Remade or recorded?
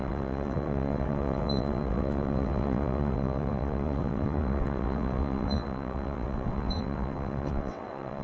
remade